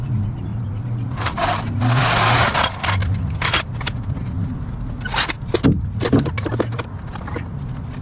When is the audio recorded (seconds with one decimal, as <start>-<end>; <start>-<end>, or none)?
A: 0.0-0.5; 1.8-3.0; 3.7-5.6; 6.3-8.0